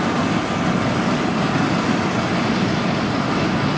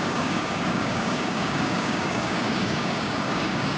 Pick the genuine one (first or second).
first